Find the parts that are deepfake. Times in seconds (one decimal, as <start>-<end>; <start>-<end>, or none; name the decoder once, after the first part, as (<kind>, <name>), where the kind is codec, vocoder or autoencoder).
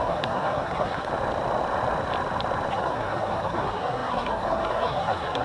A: 0.0-1.1 (codec, SNAC); 2.7-5.4